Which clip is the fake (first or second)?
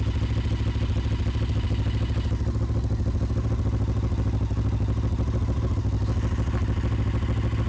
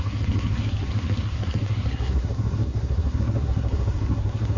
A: second